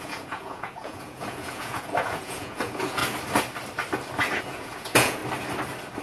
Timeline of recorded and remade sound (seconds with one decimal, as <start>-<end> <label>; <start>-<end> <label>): 0.0-3.0 remade; 3.0-4.4 recorded; 4.4-5.2 remade; 5.2-6.0 recorded